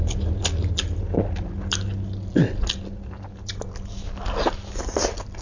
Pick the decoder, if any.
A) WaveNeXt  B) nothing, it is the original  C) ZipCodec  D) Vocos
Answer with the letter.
B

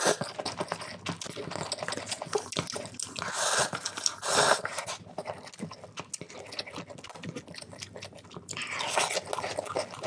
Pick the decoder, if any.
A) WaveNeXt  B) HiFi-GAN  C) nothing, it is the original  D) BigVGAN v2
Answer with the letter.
C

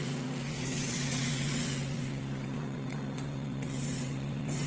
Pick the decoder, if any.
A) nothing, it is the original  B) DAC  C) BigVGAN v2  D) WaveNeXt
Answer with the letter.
D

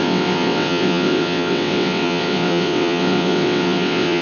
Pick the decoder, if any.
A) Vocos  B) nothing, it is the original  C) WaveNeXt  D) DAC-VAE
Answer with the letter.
C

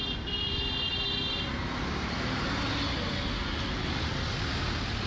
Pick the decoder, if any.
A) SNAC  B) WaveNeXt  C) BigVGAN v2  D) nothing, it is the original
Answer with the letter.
D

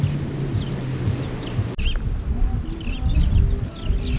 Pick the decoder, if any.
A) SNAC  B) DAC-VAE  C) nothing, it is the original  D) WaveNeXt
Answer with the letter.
C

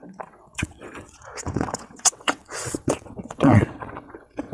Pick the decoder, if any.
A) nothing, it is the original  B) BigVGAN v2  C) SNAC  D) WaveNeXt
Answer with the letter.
D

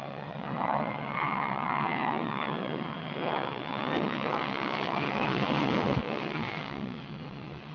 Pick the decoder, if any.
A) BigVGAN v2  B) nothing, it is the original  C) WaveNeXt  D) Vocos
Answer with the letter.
C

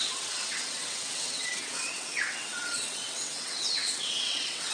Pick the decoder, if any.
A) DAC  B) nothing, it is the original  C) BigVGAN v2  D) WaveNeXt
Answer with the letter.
D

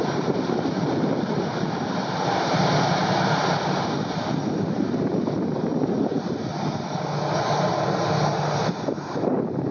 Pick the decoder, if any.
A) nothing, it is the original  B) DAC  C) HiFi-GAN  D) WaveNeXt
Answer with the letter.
A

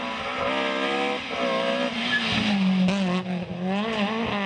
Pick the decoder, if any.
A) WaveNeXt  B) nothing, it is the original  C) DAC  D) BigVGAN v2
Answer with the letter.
B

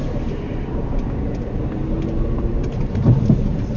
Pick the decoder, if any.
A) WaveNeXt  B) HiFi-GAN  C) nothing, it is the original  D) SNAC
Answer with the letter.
C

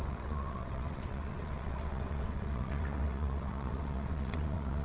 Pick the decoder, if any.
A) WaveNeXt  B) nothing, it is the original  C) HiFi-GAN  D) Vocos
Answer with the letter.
A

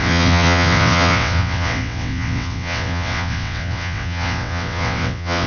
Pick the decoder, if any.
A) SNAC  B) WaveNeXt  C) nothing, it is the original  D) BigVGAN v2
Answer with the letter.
B